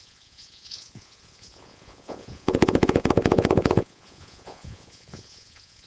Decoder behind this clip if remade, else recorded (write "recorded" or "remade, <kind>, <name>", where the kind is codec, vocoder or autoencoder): remade, vocoder, Vocos